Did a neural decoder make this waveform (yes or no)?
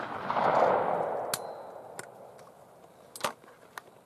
no